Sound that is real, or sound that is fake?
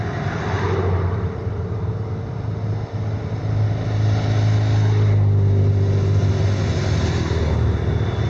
real